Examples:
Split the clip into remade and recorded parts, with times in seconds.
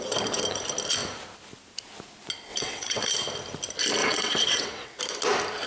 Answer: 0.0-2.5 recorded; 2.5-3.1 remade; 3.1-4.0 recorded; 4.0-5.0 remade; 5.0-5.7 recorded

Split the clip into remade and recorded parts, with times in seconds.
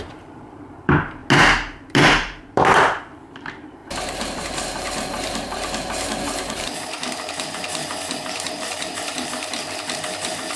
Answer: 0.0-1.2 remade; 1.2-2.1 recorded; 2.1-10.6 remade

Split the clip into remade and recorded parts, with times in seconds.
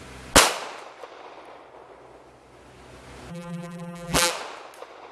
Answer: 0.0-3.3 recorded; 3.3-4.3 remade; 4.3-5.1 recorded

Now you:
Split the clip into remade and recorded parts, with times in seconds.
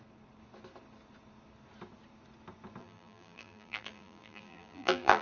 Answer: 0.0-2.8 recorded; 2.8-5.2 remade